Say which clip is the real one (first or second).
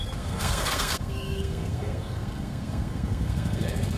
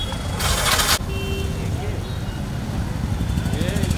second